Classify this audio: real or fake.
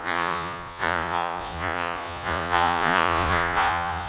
fake